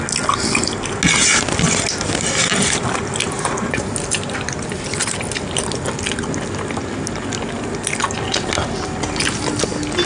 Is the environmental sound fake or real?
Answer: real